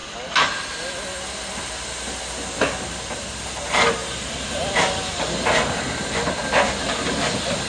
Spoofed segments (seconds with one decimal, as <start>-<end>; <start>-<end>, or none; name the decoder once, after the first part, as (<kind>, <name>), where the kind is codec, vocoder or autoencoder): none